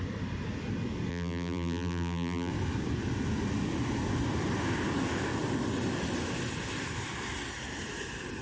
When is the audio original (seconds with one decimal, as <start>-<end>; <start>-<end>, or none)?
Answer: 0.0-1.1; 2.5-8.4

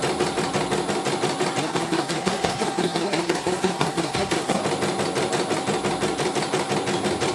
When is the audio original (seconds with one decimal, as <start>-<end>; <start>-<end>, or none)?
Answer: 0.0-1.6; 4.6-7.3

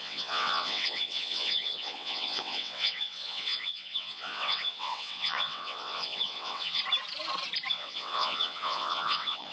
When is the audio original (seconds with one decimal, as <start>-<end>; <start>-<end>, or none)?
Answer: 6.8-7.7